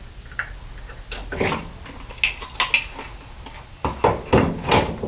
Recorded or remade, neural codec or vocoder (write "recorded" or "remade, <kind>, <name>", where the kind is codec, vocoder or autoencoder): recorded